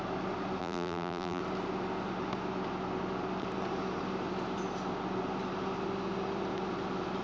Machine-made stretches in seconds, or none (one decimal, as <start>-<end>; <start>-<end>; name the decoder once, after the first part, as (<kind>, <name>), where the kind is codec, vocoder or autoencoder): 0.6-1.4 (vocoder, BigVGAN v2)

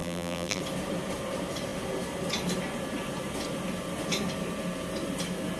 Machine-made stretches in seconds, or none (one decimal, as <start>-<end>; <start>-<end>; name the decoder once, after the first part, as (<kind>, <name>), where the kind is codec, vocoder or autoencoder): 0.0-0.6 (vocoder, BigVGAN v2)

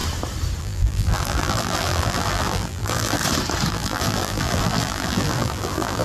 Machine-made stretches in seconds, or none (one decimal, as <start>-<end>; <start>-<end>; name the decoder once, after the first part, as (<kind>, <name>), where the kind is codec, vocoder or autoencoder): 0.6-3.2 (vocoder, BigVGAN v2); 3.7-6.0

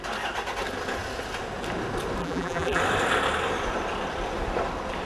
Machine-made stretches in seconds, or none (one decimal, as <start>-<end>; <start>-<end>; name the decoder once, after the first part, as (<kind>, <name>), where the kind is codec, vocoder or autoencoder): 2.2-2.8 (vocoder, BigVGAN v2)

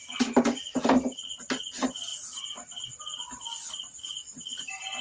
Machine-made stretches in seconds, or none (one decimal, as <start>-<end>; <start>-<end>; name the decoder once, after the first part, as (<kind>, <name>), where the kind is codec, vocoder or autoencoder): 2.1-3.0 (vocoder, BigVGAN v2)

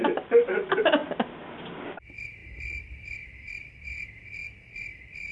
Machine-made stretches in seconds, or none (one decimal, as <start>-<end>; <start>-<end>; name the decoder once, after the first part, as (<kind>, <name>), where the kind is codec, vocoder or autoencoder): 2.4-3.8 (vocoder, BigVGAN v2); 4.4-5.3

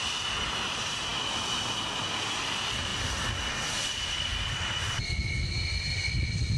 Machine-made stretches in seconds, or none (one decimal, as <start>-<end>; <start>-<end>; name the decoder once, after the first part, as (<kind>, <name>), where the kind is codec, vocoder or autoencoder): none